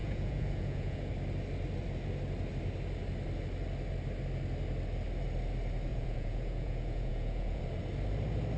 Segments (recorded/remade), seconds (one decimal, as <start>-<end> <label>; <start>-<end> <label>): 0.0-1.1 remade; 1.1-5.9 recorded; 5.9-7.6 remade; 7.6-8.6 recorded